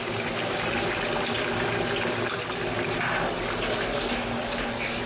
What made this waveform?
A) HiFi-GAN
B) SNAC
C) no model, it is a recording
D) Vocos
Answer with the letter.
C